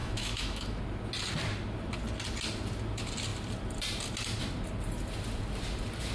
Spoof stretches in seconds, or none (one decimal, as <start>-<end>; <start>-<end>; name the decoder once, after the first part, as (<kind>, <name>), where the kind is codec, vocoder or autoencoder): 0.0-0.8 (autoencoder, DAC-VAE)